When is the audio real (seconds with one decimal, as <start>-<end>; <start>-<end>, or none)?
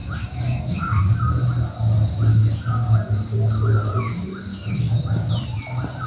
1.0-2.3; 3.1-4.5; 5.3-6.1